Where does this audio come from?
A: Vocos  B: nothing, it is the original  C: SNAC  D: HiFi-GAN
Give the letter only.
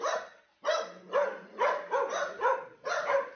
B